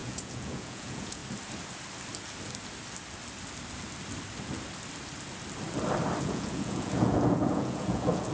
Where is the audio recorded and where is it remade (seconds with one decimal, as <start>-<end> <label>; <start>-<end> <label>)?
0.0-1.2 remade; 1.2-6.2 recorded; 6.2-8.3 remade